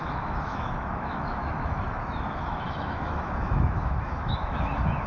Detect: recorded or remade remade